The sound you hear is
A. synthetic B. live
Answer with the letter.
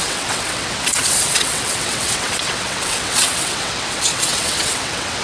A